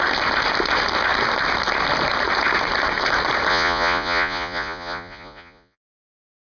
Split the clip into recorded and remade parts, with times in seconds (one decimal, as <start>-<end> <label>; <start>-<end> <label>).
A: 0.0-3.5 recorded; 3.5-6.0 remade; 6.0-6.5 recorded